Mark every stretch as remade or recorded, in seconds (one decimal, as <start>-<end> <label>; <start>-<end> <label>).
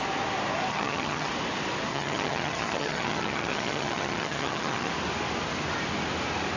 0.0-0.7 recorded; 0.7-1.3 remade; 1.3-1.9 recorded; 1.9-4.9 remade; 4.9-6.6 recorded